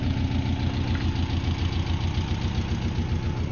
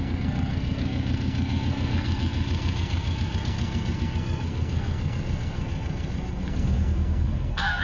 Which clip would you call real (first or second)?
first